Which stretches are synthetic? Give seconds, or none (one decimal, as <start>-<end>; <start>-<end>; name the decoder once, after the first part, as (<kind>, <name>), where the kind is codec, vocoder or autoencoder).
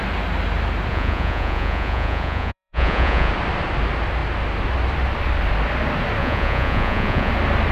0.9-3.3 (vocoder, Vocos); 6.2-7.3